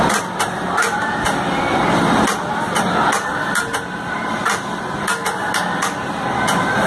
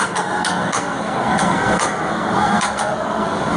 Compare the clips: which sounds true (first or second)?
first